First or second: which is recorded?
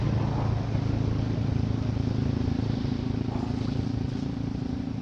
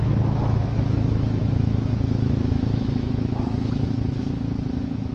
first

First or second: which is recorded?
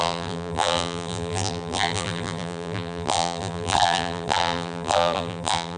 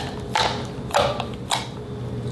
second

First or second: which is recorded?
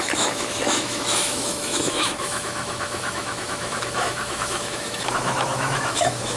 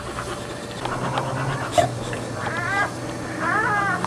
second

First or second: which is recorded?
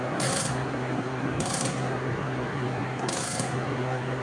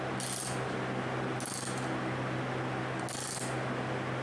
second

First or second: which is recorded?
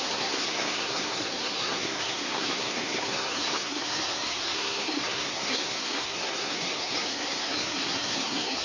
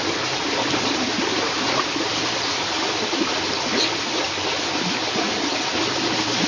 second